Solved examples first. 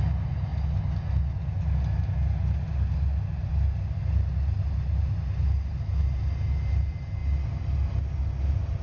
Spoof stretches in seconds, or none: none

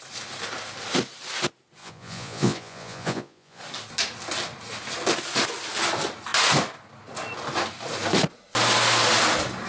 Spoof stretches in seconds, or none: 1.8-3.6 (vocoder, Vocos)

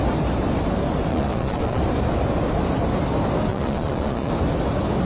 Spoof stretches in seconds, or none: 1.1-1.8 (vocoder, Vocos); 3.5-4.3

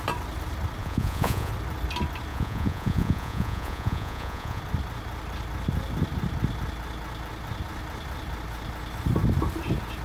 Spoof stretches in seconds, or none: 0.8-1.5 (vocoder, Vocos); 2.3-4.6

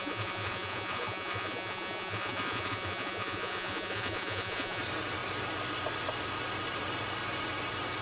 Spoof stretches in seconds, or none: 0.0-4.8 (vocoder, Vocos)

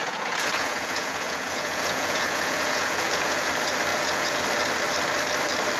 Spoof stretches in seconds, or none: 0.0-3.5 (vocoder, Vocos); 3.9-4.4

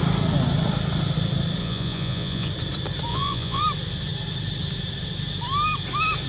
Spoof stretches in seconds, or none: 1.6-2.5 (vocoder, Vocos); 3.1-3.6

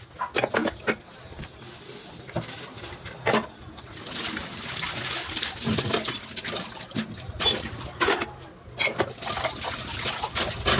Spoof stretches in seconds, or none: none